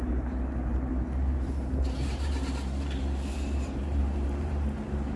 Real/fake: fake